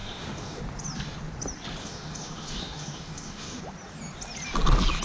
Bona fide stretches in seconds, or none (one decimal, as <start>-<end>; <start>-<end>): 0.6-1.8; 3.6-5.0

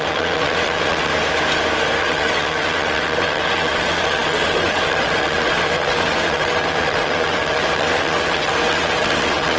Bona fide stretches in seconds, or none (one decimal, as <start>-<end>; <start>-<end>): 1.1-2.0